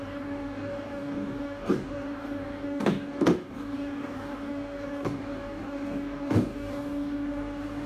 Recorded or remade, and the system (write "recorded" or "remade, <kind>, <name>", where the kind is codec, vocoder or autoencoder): remade, codec, DAC